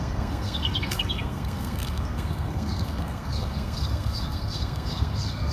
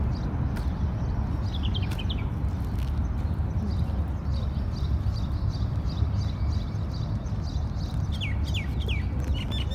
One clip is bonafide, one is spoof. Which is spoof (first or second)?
first